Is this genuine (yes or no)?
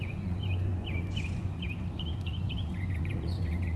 no